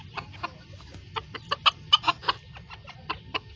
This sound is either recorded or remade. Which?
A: recorded